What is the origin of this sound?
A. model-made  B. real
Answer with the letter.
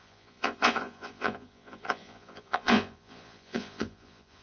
A